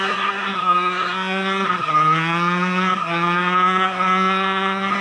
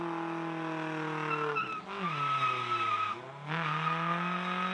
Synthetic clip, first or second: first